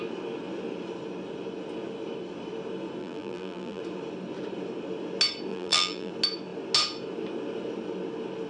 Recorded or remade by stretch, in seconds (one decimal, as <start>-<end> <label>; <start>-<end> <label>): 0.0-3.0 recorded; 3.0-3.8 remade; 3.8-5.5 recorded; 5.5-6.1 remade; 6.1-8.5 recorded